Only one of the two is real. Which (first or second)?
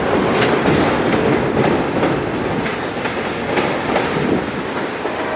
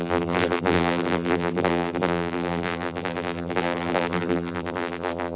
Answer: first